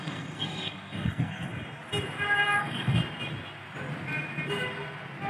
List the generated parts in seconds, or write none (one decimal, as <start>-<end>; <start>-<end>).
0.0-1.5; 2.6-3.0